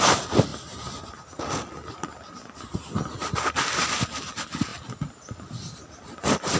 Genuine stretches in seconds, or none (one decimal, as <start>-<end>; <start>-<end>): 0.0-6.6